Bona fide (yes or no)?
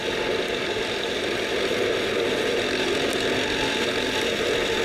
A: yes